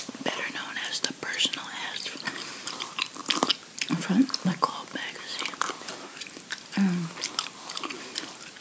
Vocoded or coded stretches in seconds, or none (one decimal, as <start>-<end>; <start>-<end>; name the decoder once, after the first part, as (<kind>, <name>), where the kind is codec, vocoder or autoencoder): none